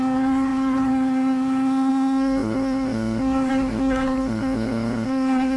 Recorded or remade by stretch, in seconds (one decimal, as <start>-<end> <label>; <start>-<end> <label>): 0.0-5.6 remade